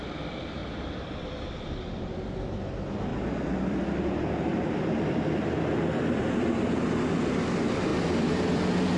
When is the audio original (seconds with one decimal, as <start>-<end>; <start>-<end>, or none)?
none